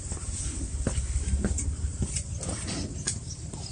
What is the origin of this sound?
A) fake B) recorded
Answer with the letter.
A